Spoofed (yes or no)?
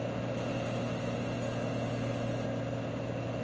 no